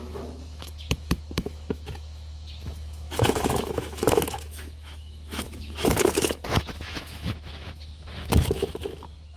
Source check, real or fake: fake